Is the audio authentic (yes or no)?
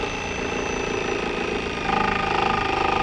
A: yes